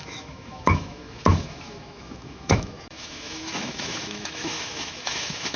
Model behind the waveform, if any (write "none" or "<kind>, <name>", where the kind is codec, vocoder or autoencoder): autoencoder, DAC-VAE